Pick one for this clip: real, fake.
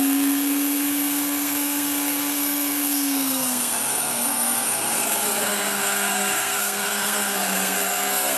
fake